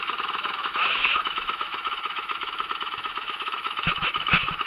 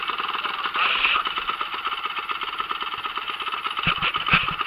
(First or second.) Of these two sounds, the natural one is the second